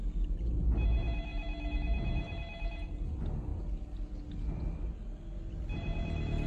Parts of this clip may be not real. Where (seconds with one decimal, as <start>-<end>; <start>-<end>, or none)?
none